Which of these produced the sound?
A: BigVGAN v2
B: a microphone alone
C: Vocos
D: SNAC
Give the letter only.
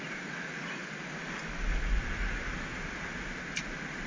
B